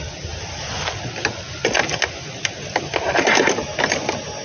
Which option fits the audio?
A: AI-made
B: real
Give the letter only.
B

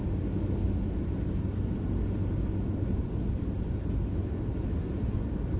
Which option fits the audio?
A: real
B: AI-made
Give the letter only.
A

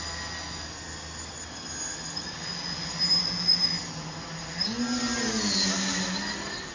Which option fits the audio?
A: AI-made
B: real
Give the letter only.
B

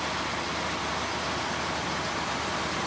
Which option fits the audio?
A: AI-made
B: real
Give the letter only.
B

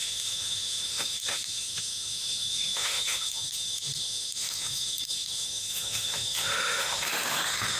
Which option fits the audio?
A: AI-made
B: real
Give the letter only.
A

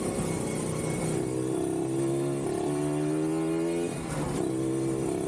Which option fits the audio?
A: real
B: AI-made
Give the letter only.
A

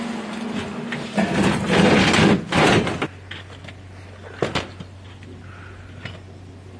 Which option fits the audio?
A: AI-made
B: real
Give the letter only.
B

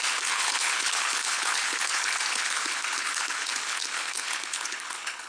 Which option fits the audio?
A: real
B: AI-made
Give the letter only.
B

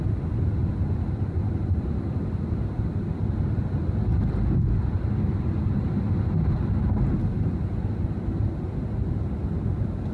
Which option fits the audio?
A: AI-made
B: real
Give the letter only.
B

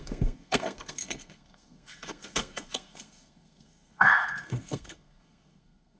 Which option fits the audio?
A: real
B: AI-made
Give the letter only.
B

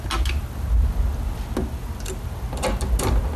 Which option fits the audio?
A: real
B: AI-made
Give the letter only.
A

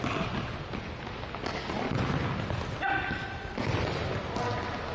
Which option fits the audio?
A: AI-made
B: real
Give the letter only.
B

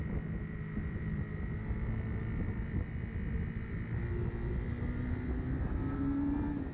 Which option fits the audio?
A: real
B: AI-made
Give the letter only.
A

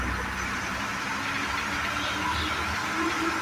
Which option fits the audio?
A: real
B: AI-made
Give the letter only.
A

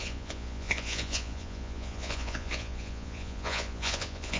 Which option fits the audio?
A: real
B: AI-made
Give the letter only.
B